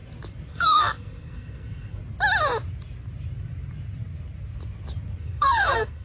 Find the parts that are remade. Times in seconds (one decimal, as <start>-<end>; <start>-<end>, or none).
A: 0.5-2.0; 5.2-6.0